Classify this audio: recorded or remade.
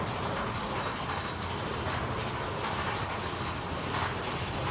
recorded